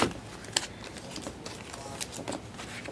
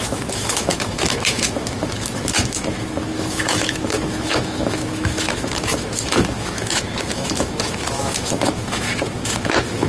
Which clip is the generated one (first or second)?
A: second